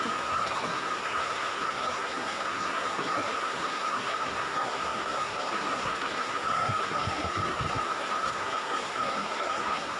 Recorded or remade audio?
remade